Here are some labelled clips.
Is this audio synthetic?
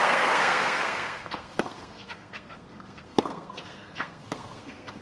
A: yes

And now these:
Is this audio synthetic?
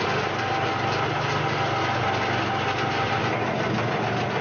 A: no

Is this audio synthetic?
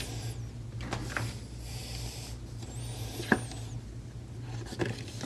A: no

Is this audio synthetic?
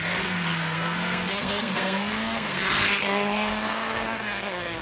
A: yes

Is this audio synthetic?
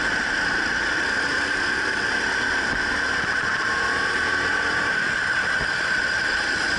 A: no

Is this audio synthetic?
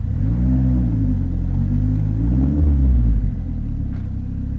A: no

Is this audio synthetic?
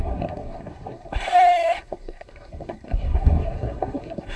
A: yes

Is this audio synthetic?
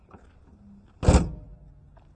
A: no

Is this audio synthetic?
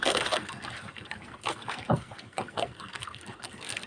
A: yes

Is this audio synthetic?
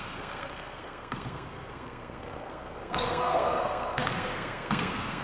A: yes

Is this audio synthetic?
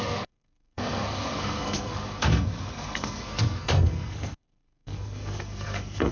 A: yes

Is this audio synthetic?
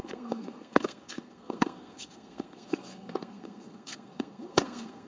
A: yes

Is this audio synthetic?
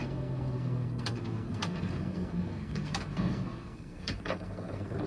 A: yes